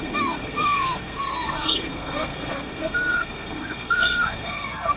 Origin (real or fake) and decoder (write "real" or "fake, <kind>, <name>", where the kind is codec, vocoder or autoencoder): fake, codec, SNAC